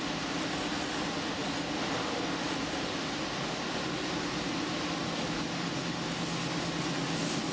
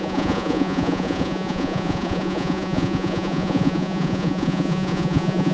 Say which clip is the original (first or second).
first